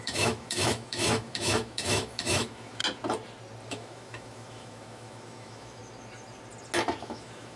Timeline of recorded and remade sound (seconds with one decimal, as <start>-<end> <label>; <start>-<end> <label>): 0.0-2.8 remade; 2.8-3.7 recorded; 3.7-5.8 remade; 5.8-7.0 recorded; 7.0-7.6 remade